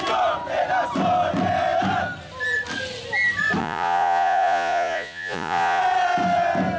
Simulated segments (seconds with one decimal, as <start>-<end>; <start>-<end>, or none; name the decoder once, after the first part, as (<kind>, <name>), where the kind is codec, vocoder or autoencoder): 3.6-5.8 (vocoder, Vocos)